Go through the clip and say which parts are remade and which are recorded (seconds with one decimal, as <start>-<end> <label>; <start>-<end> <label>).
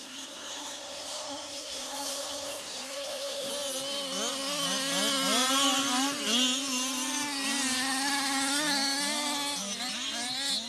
0.0-3.5 remade; 3.5-10.7 recorded